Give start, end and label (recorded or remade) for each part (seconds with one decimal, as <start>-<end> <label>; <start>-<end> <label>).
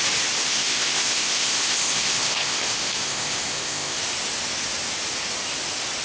0.0-0.4 recorded; 0.4-4.0 remade; 4.0-6.0 recorded